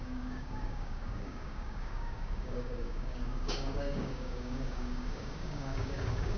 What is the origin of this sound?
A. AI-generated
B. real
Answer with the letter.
A